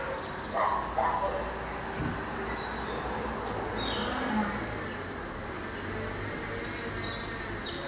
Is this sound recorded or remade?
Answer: recorded